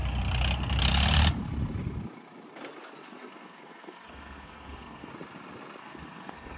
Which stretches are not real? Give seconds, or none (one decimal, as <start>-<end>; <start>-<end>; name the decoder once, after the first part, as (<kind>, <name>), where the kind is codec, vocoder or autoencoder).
3.0-5.1 (codec, SNAC); 5.8-6.6